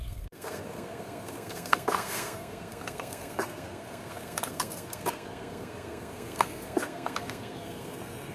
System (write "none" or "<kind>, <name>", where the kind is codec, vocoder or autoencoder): codec, SNAC